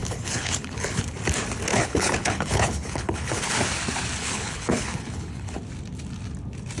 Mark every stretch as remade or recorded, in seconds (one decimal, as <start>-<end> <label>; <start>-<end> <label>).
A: 0.0-1.0 remade; 1.0-1.7 recorded; 1.7-3.5 remade; 3.5-4.2 recorded; 4.2-5.6 remade; 5.6-6.8 recorded